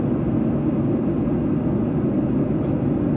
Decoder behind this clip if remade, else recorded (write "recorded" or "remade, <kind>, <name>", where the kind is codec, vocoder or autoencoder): recorded